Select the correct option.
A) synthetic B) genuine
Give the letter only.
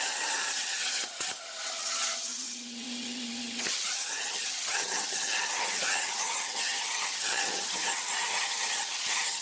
A